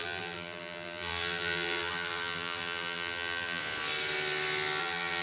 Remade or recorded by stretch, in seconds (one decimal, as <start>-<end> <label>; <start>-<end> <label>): 0.0-3.6 remade; 3.6-4.8 recorded; 4.8-5.2 remade